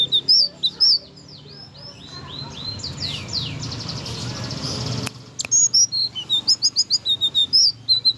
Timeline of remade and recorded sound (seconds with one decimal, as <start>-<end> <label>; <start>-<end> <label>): 0.0-8.2 recorded